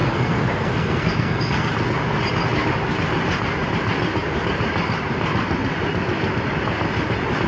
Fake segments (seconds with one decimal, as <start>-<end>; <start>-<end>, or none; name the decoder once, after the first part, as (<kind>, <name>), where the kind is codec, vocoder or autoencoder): 0.0-1.7 (codec, SNAC)